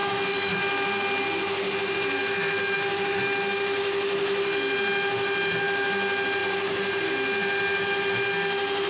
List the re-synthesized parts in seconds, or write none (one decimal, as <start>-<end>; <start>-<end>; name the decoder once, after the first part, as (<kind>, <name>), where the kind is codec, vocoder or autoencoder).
0.0-0.6 (autoencoder, DAC-VAE); 2.2-3.2